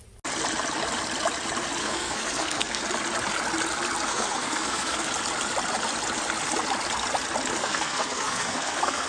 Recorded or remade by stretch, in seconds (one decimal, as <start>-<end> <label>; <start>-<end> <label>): 0.0-1.8 recorded; 1.8-2.8 remade; 2.8-4.1 recorded; 4.1-5.1 remade; 5.1-7.6 recorded; 7.6-9.1 remade